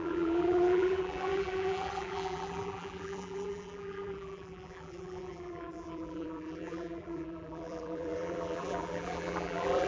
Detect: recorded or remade remade